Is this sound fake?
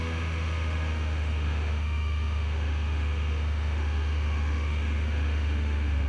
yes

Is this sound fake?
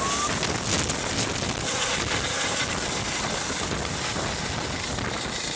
no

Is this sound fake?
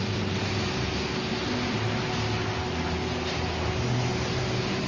no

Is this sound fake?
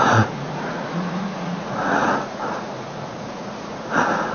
yes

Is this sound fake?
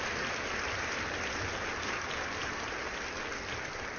no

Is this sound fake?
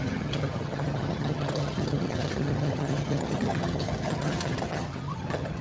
yes